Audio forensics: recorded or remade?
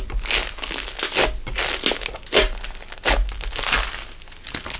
recorded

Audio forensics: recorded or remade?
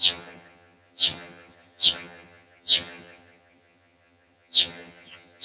remade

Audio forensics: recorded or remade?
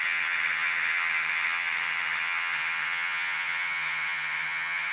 remade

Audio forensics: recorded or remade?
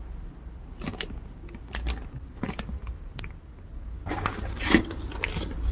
recorded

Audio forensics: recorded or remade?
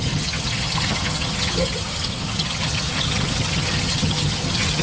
remade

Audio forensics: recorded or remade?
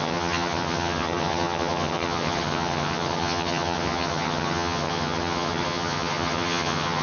remade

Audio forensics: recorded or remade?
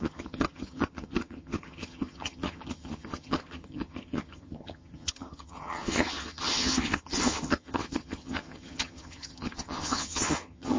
remade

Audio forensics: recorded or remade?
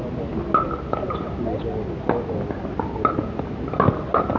recorded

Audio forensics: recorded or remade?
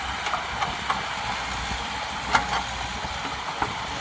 recorded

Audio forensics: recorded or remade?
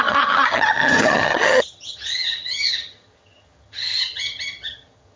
remade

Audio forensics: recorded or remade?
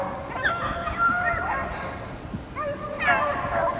recorded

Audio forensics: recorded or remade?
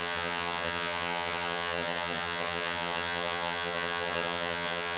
remade